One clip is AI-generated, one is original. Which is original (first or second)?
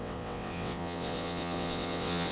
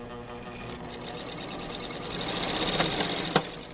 second